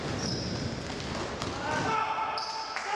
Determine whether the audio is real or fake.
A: real